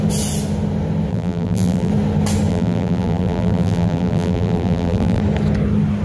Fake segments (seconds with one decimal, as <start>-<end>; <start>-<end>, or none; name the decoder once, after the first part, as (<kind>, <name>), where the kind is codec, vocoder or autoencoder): 1.1-1.9 (vocoder, BigVGAN v2); 2.5-5.2